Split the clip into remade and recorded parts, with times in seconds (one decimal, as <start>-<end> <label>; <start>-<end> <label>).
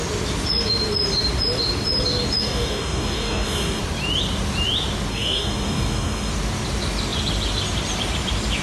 0.0-2.4 recorded; 2.4-3.8 remade; 3.8-5.1 recorded; 5.1-6.3 remade; 6.3-8.6 recorded